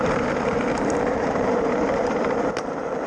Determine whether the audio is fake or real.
fake